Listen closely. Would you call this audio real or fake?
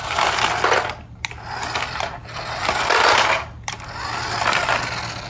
real